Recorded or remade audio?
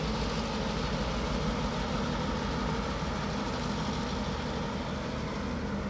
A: recorded